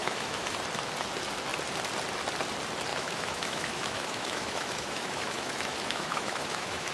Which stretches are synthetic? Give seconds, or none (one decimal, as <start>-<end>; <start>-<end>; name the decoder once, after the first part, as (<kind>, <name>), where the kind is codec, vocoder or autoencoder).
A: 0.0-0.6 (autoencoder, DAC-VAE); 2.9-6.9